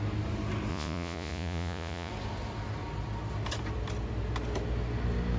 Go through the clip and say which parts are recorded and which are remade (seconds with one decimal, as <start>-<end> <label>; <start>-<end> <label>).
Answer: 0.0-0.7 recorded; 0.7-2.1 remade; 2.1-5.4 recorded